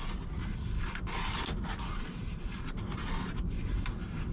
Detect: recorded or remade recorded